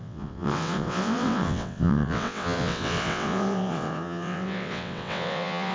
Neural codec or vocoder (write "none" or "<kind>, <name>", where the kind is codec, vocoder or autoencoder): vocoder, WaveNeXt